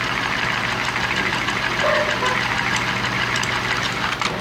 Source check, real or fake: real